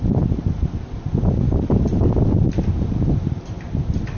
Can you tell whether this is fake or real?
real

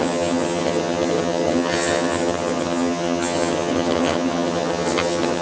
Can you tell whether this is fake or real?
fake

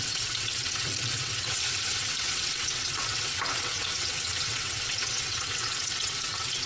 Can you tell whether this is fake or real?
fake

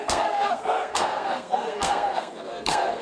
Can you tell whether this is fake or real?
fake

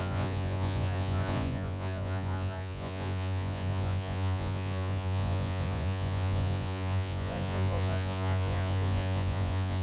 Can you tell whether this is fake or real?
fake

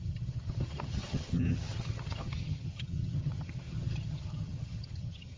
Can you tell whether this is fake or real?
fake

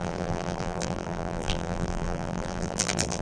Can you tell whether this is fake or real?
fake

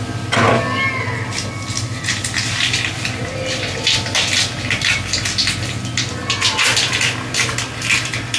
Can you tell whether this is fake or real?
real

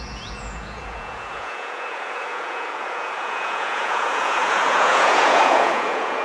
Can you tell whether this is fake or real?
fake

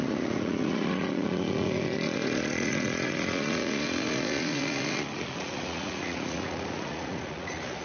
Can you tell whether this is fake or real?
fake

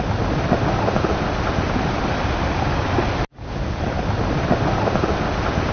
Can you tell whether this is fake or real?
real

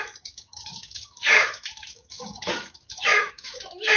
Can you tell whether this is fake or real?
fake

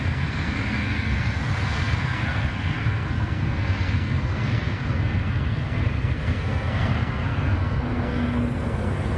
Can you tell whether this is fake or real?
fake